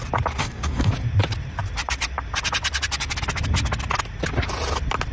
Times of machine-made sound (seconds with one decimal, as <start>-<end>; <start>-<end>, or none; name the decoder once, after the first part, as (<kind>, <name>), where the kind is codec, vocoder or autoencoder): 0.4-0.9 (codec, DAC)